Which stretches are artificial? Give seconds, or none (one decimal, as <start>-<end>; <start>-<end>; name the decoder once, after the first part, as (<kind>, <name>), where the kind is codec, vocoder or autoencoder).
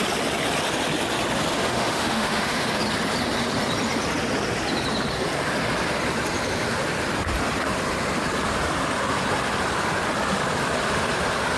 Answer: 1.5-2.8 (autoencoder, DAC-VAE)